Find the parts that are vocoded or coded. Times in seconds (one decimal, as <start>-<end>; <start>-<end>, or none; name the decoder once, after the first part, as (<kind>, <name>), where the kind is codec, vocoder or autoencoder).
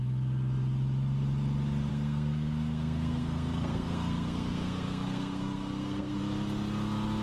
1.9-6.2 (codec, SNAC)